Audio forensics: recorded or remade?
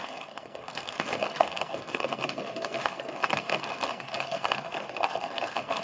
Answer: remade